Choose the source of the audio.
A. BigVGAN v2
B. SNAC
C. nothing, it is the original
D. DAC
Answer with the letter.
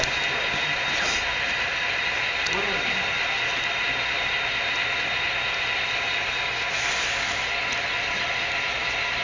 C